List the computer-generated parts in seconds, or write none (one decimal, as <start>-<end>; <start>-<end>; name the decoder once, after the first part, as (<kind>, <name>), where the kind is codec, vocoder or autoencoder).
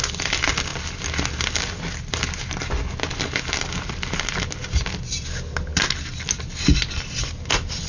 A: none